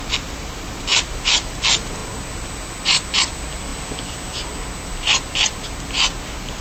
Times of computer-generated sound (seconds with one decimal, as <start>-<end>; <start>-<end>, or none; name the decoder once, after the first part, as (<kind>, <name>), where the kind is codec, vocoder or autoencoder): none